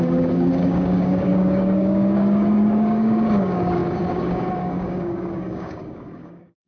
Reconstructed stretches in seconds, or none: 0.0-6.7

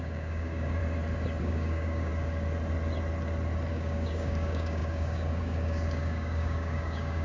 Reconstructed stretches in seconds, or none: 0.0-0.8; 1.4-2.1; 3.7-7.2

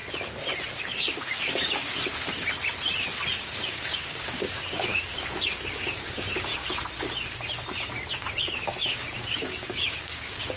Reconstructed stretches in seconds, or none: 0.8-2.1; 3.4-6.5; 8.1-10.6

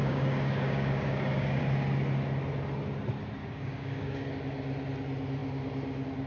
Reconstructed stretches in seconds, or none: 0.0-1.6; 3.4-4.3

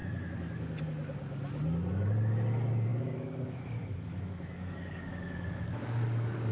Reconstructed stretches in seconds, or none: 0.0-0.8; 2.9-6.5

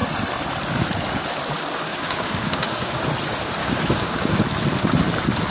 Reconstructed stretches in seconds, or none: 1.9-3.0; 3.6-4.4

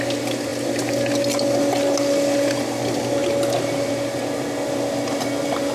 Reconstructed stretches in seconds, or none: none

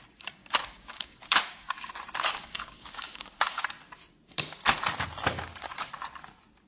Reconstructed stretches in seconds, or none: 0.4-1.9; 2.3-3.4; 5.3-5.9